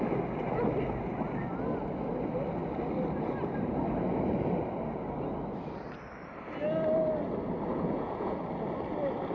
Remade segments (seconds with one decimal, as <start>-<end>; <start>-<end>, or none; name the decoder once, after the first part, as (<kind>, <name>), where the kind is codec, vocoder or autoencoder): 7.7-8.4 (vocoder, Vocos)